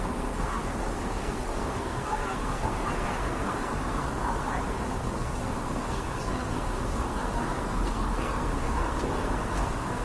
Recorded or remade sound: remade